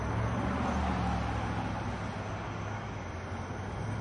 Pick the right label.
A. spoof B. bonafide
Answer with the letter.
B